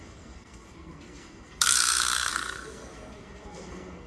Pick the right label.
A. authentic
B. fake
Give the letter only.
B